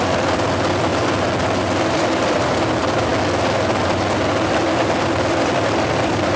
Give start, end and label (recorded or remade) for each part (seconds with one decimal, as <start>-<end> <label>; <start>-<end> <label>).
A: 0.0-0.9 remade; 0.9-1.9 recorded; 1.9-3.1 remade; 3.1-3.8 recorded; 3.8-6.4 remade